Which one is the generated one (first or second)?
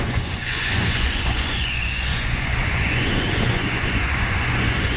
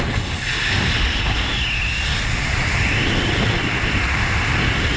first